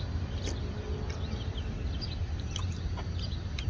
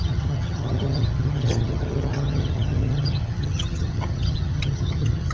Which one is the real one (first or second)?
first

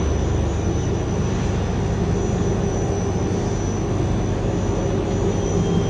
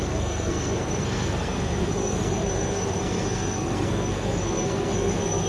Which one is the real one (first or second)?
first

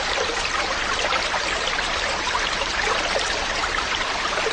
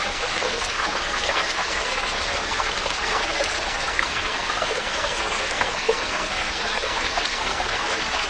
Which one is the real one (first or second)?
first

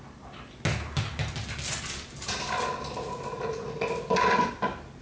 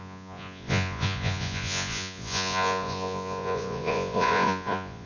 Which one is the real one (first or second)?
first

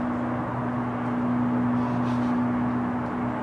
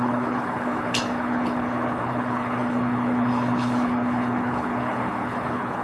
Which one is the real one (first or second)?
first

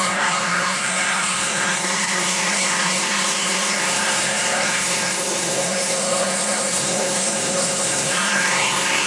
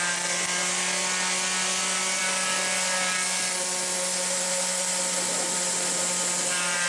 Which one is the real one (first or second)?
second